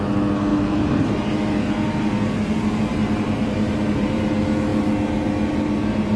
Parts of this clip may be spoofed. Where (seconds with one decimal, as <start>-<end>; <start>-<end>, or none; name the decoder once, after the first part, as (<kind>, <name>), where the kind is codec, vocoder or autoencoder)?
0.5-1.7 (vocoder, BigVGAN v2); 2.9-4.2